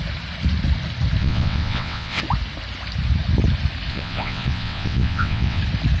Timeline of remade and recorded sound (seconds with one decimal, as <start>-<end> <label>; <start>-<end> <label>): 0.0-1.2 recorded; 1.2-2.2 remade; 2.2-3.9 recorded; 3.9-5.6 remade; 5.6-6.0 recorded